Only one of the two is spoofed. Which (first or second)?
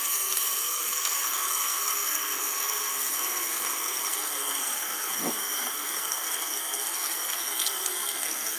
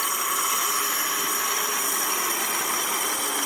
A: first